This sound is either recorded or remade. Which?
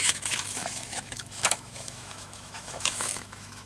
remade